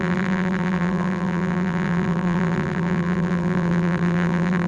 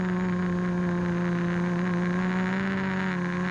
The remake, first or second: first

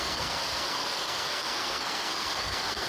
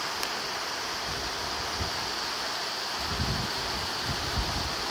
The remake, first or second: first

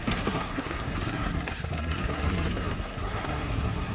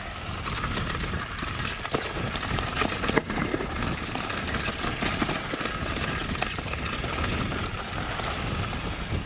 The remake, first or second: first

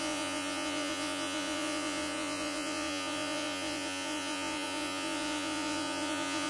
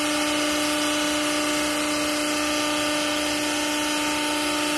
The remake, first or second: first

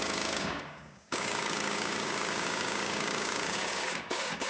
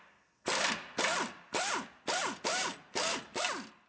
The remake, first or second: first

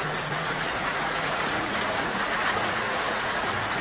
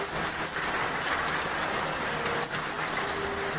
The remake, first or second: first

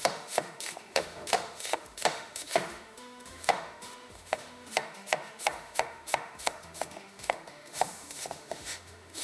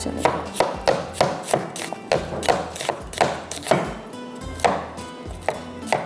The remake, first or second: first